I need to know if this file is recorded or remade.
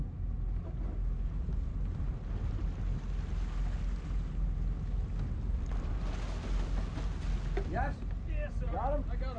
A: recorded